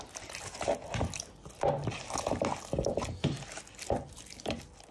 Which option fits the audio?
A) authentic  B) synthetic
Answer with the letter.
A